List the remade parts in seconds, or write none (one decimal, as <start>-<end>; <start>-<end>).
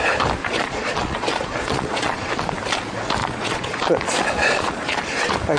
0.4-2.3; 3.2-3.8; 4.4-5.0